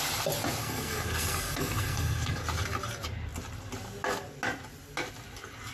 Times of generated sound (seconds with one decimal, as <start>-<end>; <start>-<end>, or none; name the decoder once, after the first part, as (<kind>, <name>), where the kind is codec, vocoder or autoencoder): 0.6-2.4 (codec, SNAC)